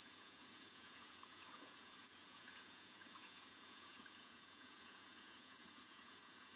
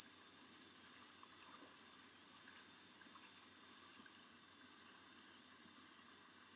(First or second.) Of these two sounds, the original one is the second